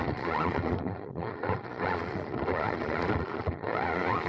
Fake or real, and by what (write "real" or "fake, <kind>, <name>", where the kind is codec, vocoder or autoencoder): fake, vocoder, Vocos